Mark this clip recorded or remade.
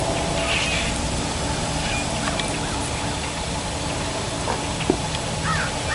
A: recorded